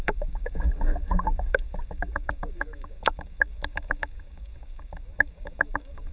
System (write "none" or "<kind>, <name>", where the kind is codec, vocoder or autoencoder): codec, DAC